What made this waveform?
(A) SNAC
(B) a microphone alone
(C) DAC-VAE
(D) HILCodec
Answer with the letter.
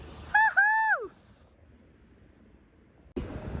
B